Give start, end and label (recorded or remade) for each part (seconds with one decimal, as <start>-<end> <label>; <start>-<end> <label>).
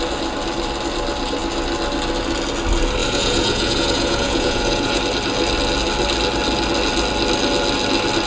0.0-3.0 recorded; 3.0-5.0 remade; 5.0-8.3 recorded